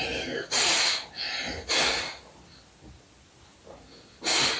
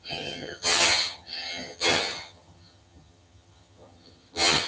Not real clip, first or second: second